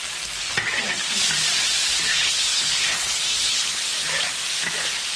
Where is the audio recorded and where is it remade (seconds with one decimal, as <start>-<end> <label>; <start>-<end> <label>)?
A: 0.0-2.1 recorded; 2.1-3.8 remade; 3.8-5.2 recorded